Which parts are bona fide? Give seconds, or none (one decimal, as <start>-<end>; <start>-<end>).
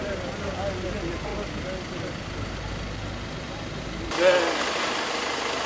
0.0-5.7